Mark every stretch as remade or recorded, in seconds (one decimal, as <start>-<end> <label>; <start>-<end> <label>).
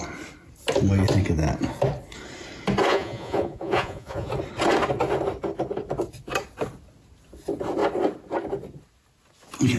0.0-2.9 recorded; 2.9-4.3 remade; 4.3-9.8 recorded